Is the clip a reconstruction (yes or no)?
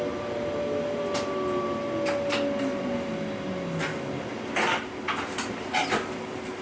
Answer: no